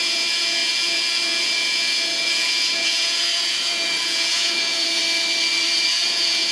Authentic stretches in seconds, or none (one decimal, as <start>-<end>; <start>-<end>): 5.0-5.9